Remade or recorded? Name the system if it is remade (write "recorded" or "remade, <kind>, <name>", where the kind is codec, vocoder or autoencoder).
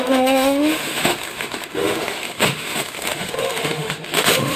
remade, autoencoder, DAC-VAE